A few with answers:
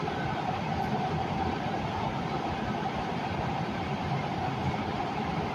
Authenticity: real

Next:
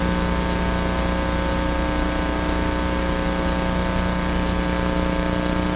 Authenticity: real